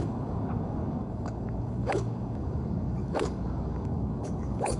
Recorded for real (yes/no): no